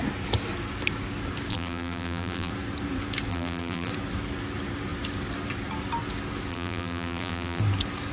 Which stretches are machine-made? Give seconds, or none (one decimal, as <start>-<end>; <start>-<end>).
1.5-2.5; 3.3-3.9; 6.5-7.6